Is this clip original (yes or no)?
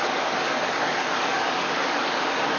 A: no